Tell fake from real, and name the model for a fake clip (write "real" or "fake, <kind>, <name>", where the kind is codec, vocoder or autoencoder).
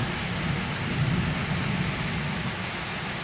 real